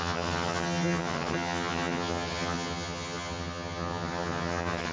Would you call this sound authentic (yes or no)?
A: no